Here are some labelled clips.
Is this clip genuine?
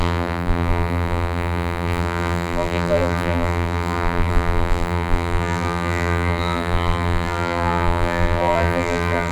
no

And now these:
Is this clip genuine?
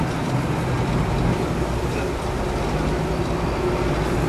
yes